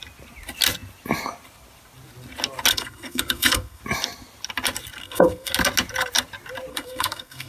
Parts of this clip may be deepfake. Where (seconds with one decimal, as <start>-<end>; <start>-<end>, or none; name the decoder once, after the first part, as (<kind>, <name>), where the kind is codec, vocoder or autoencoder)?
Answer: 2.7-3.8 (codec, SNAC); 5.0-5.5; 6.7-7.5